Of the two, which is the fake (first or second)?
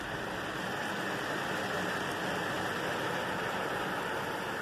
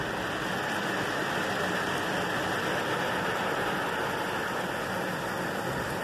first